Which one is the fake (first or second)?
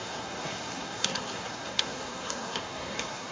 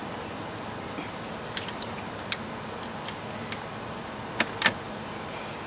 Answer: first